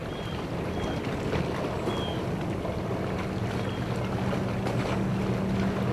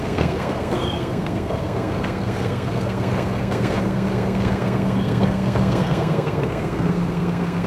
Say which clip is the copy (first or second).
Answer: second